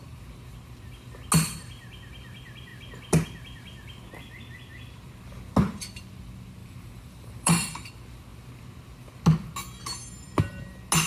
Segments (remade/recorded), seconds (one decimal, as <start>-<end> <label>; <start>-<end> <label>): 0.0-6.6 recorded; 6.6-7.9 remade; 7.9-11.1 recorded